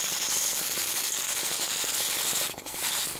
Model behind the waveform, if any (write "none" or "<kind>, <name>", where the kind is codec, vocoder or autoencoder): codec, SNAC